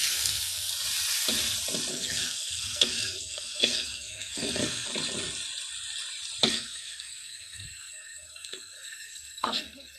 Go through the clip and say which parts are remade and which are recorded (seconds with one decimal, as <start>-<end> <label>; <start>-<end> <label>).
0.0-0.7 remade; 0.7-1.9 recorded; 1.9-4.9 remade; 4.9-6.4 recorded; 6.4-10.0 remade